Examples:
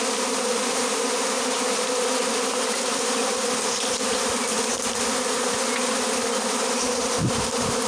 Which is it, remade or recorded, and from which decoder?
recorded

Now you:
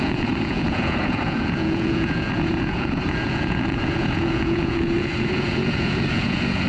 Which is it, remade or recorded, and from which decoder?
remade, vocoder, Vocos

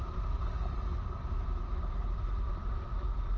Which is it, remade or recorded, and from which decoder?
recorded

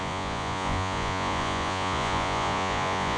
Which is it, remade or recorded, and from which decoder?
remade, vocoder, Vocos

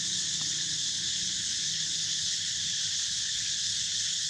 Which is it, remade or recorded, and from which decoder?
remade, codec, HILCodec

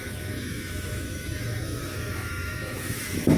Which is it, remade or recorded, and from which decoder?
remade, autoencoder, DAC-VAE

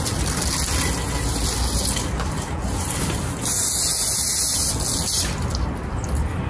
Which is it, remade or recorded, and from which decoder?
recorded